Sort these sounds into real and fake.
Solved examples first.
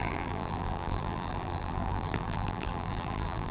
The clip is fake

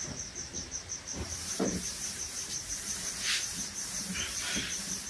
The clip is fake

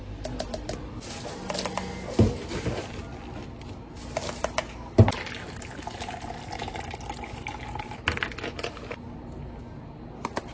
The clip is real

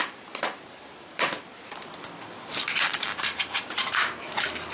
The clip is fake